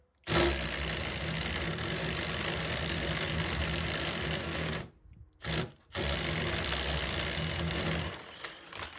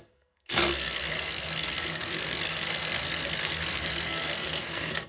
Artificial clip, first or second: second